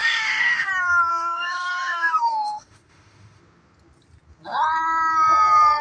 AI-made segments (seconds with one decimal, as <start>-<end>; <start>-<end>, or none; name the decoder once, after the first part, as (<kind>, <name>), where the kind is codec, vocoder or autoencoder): 0.0-0.7 (autoencoder, DAC-VAE); 1.1-3.4